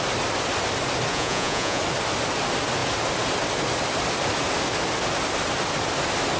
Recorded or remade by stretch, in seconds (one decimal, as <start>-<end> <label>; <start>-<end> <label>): 0.0-1.1 recorded; 1.1-1.8 remade; 1.8-6.4 recorded